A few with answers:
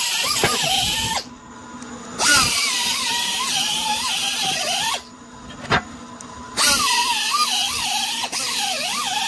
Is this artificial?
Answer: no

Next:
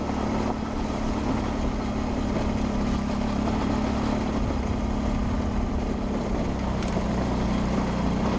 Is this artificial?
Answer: no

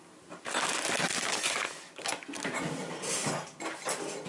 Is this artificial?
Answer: no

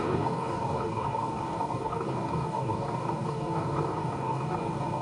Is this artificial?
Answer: yes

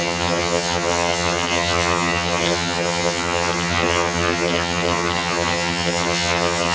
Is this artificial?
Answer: yes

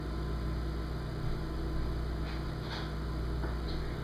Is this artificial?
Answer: no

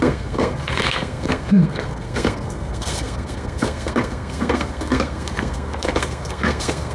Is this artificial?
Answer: yes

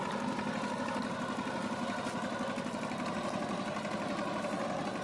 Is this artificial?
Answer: no